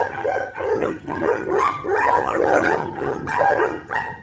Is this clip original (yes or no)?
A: no